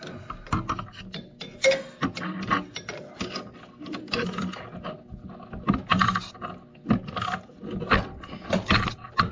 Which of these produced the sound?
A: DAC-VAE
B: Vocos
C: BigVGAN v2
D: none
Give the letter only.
D